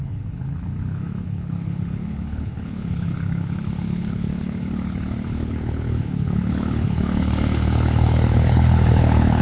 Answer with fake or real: fake